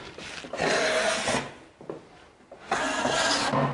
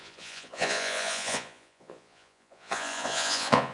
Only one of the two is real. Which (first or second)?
first